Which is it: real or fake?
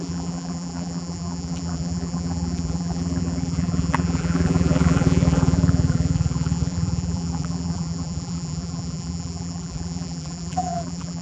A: fake